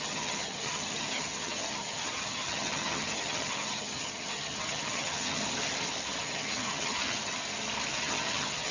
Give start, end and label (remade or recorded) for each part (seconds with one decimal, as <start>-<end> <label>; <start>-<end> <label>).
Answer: 0.0-5.4 remade; 5.4-6.2 recorded; 6.2-7.3 remade; 7.3-7.9 recorded; 7.9-8.7 remade